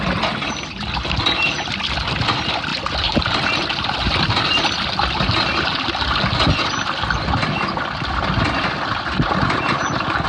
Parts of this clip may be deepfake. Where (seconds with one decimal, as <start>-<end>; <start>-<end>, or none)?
2.7-4.7